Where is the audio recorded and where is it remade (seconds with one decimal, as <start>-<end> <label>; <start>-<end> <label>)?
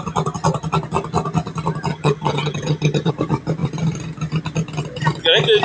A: 0.0-1.9 recorded; 1.9-3.1 remade; 3.1-5.6 recorded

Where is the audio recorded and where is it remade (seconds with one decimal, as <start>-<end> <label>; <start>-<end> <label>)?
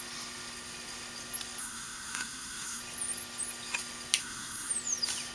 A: 0.0-1.6 recorded; 1.6-2.8 remade; 2.8-4.2 recorded; 4.2-4.7 remade; 4.7-5.3 recorded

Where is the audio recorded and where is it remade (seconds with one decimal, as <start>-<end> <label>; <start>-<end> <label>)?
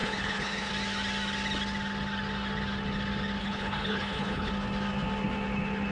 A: 0.0-0.7 remade; 0.7-3.4 recorded; 3.4-4.5 remade; 4.5-5.9 recorded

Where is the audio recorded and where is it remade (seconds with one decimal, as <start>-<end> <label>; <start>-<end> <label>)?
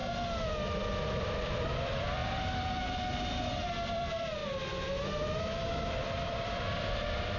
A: 0.0-1.2 recorded; 1.2-2.2 remade; 2.2-3.7 recorded; 3.7-4.4 remade; 4.4-5.9 recorded; 5.9-7.4 remade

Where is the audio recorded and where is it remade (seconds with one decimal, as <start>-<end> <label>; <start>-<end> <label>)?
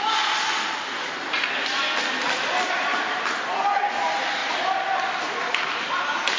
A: 0.0-4.4 recorded; 4.4-6.4 remade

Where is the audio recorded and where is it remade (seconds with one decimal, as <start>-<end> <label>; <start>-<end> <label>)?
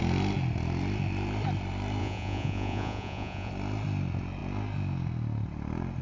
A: 0.0-2.0 recorded; 2.0-3.5 remade; 3.5-6.0 recorded